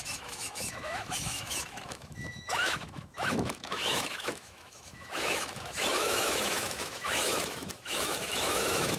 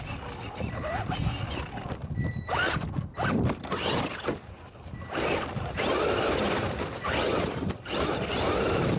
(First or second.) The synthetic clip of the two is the first